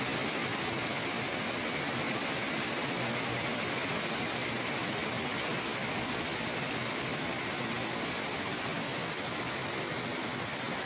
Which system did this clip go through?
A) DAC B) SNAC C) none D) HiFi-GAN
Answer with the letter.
C